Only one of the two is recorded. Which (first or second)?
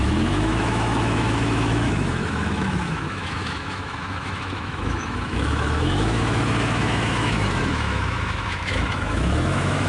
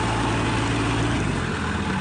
second